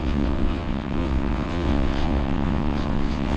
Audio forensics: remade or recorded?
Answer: remade